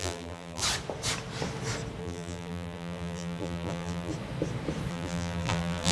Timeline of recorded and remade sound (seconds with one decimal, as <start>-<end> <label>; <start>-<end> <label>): 0.0-0.6 remade; 0.6-2.0 recorded; 2.0-4.1 remade; 4.1-4.9 recorded; 4.9-5.9 remade